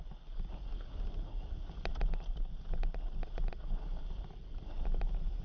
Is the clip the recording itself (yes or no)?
yes